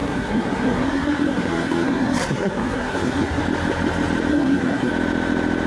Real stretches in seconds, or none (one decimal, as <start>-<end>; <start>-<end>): 3.4-4.3; 4.9-5.7